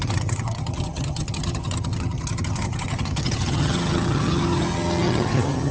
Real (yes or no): no